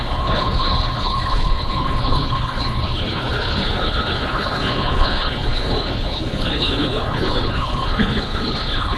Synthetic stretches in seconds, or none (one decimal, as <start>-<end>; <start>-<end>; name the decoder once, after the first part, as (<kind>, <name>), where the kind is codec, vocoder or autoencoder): 0.0-9.0 (codec, HILCodec)